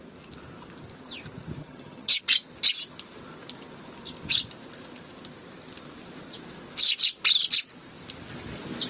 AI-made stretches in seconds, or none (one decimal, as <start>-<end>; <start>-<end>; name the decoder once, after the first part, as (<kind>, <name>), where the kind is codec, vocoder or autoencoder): 1.6-2.2 (vocoder, HiFi-GAN)